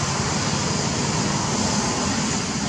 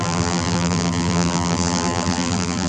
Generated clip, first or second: second